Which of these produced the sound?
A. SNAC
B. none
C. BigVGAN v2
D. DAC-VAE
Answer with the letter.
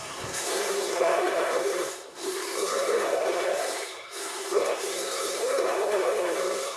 A